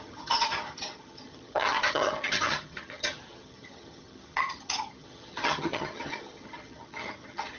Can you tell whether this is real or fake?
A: fake